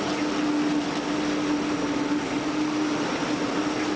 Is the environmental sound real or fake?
real